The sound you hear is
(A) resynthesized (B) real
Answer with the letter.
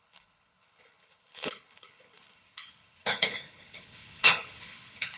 A